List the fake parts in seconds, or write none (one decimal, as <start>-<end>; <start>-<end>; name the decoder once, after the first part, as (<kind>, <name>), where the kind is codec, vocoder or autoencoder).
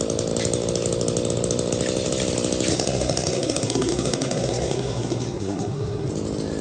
2.7-6.1 (codec, SNAC)